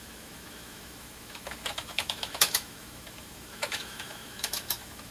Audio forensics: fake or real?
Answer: fake